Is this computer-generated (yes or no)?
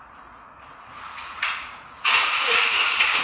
yes